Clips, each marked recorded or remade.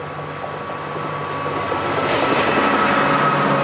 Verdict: recorded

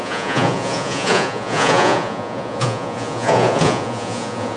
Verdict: remade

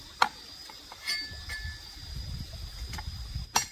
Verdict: recorded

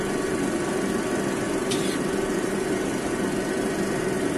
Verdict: remade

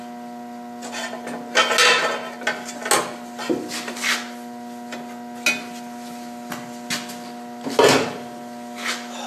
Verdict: recorded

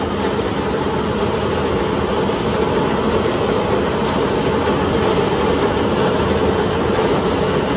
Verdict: recorded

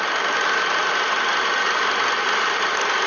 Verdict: recorded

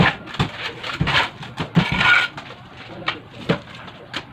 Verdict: recorded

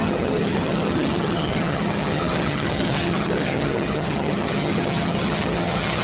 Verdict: remade